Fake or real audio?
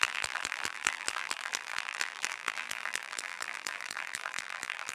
fake